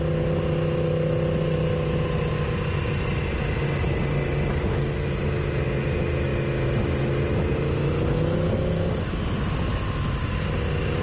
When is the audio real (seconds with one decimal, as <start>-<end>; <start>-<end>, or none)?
0.0-11.0